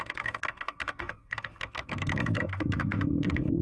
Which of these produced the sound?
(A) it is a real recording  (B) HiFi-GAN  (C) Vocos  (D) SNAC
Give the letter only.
D